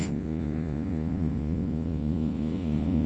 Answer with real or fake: fake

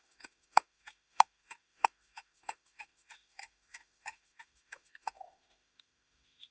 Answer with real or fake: fake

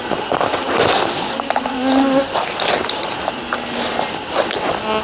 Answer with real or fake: real